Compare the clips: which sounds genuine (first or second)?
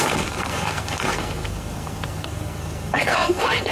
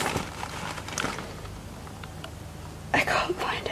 second